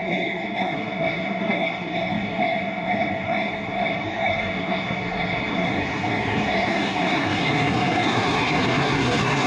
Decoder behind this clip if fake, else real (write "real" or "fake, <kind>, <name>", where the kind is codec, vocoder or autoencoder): fake, codec, SNAC